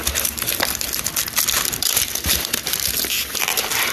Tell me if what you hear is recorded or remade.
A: remade